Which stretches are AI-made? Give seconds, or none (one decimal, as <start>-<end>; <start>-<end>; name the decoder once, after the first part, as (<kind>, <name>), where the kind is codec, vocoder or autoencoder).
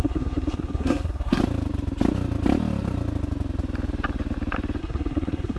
0.0-1.4 (codec, SNAC); 4.8-5.6